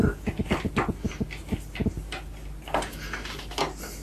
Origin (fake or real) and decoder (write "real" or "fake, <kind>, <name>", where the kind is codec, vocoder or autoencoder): real